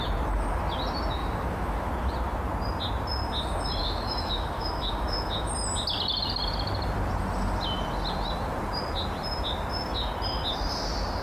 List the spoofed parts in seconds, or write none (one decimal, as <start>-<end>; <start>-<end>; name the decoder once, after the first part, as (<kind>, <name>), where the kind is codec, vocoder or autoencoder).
1.2-1.9 (autoencoder, DAC-VAE); 3.8-5.5